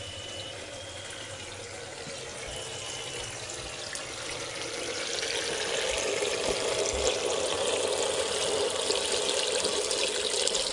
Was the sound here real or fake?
real